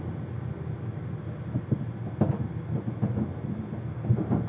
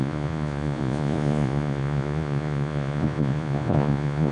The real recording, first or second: first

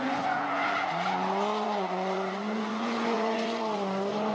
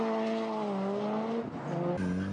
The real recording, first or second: second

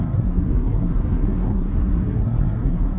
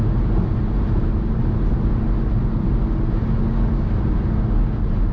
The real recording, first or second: second